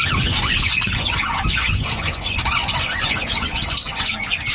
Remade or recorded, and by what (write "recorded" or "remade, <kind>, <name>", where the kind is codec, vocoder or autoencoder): remade, vocoder, Vocos